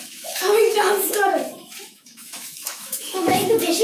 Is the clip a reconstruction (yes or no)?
yes